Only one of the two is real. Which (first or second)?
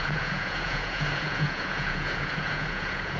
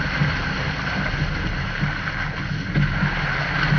second